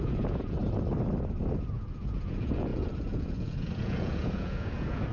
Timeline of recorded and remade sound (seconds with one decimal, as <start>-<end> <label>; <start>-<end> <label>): 0.0-0.6 remade; 0.6-1.7 recorded; 1.7-5.1 remade